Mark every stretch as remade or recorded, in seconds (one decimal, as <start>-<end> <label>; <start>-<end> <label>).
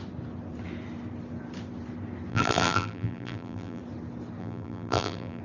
0.0-2.3 recorded; 2.3-3.8 remade; 3.8-4.4 recorded; 4.4-5.4 remade